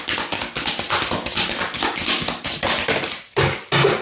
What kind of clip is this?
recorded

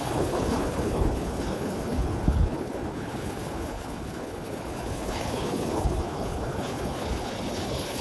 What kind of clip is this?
remade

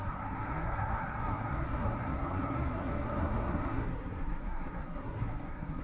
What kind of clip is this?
remade